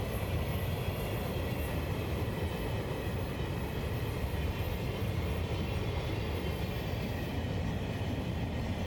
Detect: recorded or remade recorded